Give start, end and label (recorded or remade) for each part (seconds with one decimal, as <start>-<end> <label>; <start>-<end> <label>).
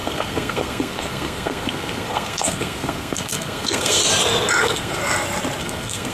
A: 0.0-4.0 remade; 4.0-4.6 recorded; 4.6-5.0 remade; 5.0-5.6 recorded; 5.6-6.1 remade